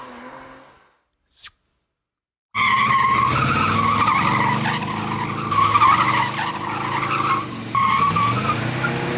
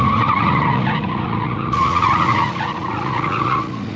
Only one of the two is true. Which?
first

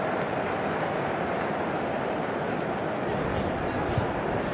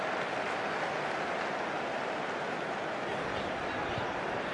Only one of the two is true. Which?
second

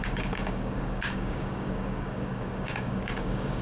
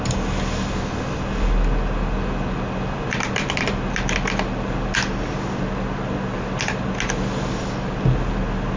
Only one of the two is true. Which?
second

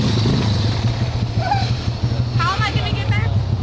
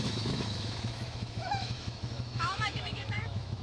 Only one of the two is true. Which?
first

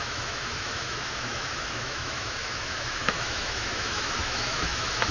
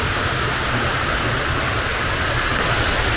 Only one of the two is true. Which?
second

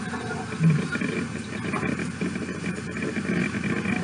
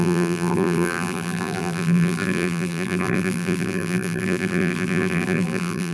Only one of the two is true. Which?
first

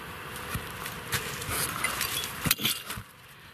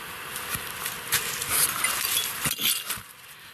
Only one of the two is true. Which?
second